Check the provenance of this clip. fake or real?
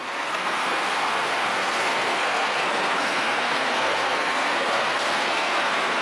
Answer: fake